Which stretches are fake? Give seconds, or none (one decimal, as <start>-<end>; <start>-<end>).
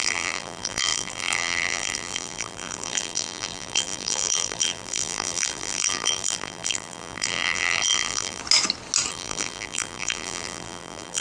0.0-8.4; 9.1-11.2